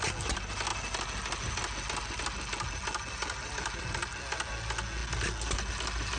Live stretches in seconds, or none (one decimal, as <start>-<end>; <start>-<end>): 0.0-6.2